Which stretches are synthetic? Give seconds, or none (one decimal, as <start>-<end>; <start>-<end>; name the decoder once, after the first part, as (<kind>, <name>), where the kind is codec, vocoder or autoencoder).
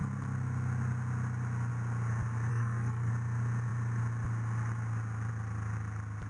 2.5-3.1 (codec, SNAC)